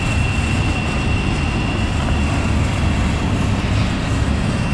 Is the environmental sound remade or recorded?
recorded